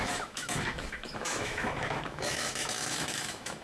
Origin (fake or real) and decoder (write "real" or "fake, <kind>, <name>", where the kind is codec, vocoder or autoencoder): fake, autoencoder, DAC-VAE